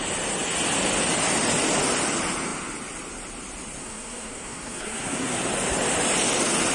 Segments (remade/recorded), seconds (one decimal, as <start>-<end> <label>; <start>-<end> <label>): 0.0-3.8 recorded; 3.8-5.4 remade; 5.4-6.7 recorded